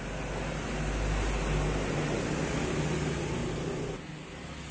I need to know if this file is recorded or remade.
recorded